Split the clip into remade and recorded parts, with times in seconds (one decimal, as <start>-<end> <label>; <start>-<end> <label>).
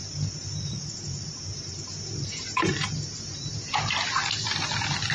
0.0-0.7 remade; 0.7-1.5 recorded; 1.5-3.9 remade; 3.9-5.1 recorded